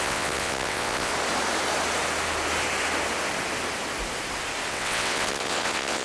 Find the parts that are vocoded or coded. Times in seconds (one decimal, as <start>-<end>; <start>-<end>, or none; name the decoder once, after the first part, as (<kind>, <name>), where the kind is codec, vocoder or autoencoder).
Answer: 0.0-1.1 (vocoder, WaveNeXt); 4.7-6.0